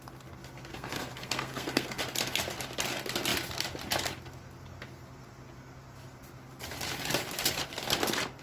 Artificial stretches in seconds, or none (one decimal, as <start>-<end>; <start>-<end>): 0.7-2.0